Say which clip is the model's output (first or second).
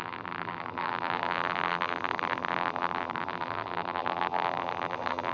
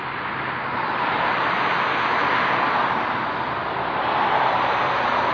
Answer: first